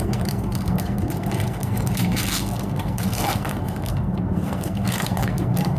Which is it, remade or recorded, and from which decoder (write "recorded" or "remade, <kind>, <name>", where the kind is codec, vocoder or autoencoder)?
remade, codec, SNAC